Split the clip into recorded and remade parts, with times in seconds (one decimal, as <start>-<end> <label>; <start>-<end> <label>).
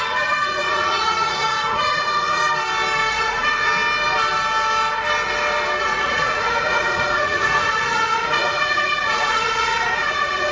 0.0-2.4 remade; 2.4-3.1 recorded; 3.1-3.7 remade; 3.7-5.8 recorded; 5.8-10.5 remade